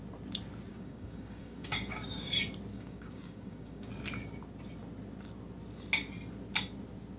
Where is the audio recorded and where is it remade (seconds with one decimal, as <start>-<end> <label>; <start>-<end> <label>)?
0.0-0.7 recorded; 0.7-2.3 remade; 2.3-2.7 recorded; 2.7-3.9 remade; 3.9-7.2 recorded